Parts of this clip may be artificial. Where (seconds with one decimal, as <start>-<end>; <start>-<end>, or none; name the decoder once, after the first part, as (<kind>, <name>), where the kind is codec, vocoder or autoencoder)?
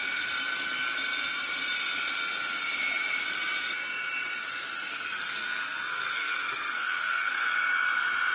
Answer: 4.9-7.6 (codec, SNAC)